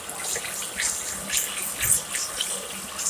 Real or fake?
real